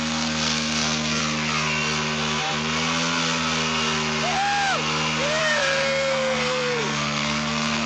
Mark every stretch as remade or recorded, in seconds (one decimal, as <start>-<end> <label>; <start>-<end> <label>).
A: 0.0-1.2 remade; 1.2-5.4 recorded; 5.4-7.9 remade